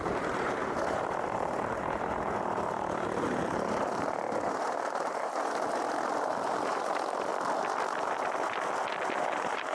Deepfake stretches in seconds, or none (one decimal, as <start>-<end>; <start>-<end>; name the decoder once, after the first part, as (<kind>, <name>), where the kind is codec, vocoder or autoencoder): 0.0-7.3 (vocoder, BigVGAN v2); 9.2-9.7